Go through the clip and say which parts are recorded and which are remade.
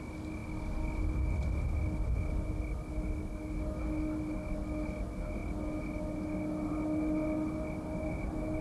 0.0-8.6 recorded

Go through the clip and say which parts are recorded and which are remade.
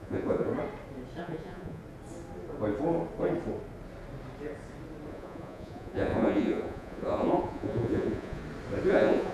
0.0-0.5 remade; 0.5-1.2 recorded; 1.2-1.8 remade; 1.8-5.1 recorded; 5.1-8.4 remade; 8.4-8.9 recorded; 8.9-9.3 remade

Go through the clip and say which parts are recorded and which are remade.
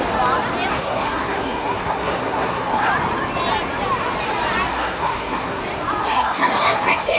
0.0-0.7 recorded; 0.7-2.9 remade; 2.9-4.7 recorded; 4.7-5.6 remade; 5.6-6.0 recorded; 6.0-7.2 remade